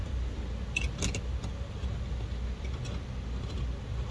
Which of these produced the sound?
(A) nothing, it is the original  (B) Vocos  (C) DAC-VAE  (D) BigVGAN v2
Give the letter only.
A